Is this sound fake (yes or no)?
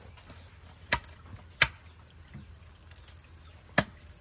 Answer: no